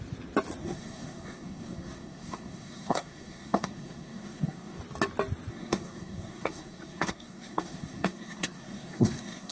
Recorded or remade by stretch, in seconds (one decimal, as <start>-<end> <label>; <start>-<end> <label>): 0.0-0.6 recorded; 0.6-4.8 remade; 4.8-5.5 recorded; 5.5-9.5 remade